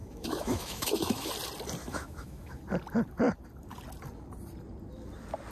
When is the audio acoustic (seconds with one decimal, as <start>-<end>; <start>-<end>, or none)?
1.3-1.8; 2.6-5.5

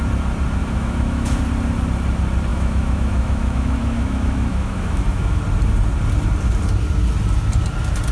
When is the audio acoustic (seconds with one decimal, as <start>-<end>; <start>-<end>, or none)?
0.0-0.6; 1.4-2.5; 5.4-8.1

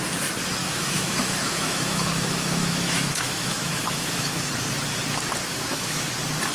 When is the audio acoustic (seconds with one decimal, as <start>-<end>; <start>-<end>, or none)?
0.0-0.6; 4.5-5.5; 6.1-6.5

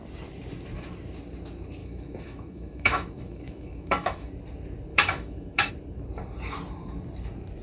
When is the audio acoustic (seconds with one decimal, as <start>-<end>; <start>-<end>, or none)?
0.0-1.8; 4.3-4.9; 5.7-7.6

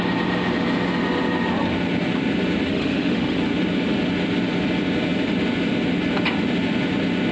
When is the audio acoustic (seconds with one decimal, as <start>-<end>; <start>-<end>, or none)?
0.0-2.7; 3.4-7.3

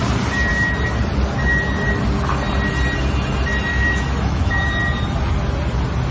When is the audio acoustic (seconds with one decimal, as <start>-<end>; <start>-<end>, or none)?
0.0-3.7; 4.5-6.1

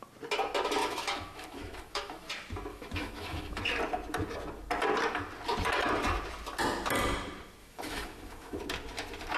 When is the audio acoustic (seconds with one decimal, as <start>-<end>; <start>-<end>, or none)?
0.0-0.8; 2.3-2.7; 3.6-7.6; 8.6-9.4

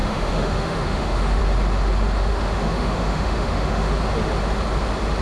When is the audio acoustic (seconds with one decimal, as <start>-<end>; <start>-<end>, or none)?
1.4-2.3; 3.9-5.2